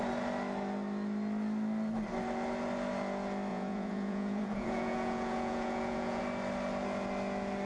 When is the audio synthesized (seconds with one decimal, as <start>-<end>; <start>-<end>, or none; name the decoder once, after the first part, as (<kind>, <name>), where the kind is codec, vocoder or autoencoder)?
3.5-6.2 (vocoder, Vocos)